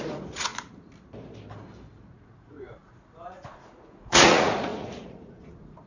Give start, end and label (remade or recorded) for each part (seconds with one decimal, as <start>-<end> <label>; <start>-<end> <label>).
0.0-0.5 remade; 0.5-2.1 recorded; 2.1-5.9 remade